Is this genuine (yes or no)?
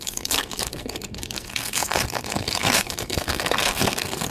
no